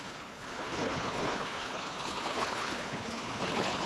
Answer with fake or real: fake